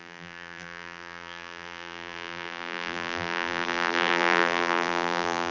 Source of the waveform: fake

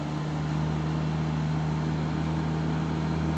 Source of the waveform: real